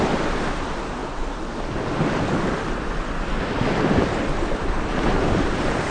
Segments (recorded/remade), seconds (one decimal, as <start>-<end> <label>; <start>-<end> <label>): 0.0-5.9 recorded